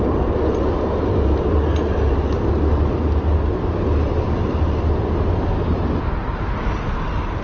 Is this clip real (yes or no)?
yes